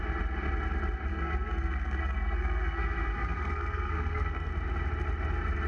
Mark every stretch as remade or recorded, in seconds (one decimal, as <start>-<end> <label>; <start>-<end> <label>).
0.0-1.1 recorded; 1.1-4.5 remade; 4.5-5.7 recorded